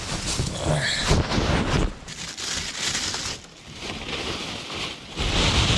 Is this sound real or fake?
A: real